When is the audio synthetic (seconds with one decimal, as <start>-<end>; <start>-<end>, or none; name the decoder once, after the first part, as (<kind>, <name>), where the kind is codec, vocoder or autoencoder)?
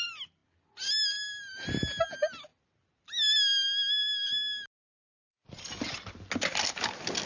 none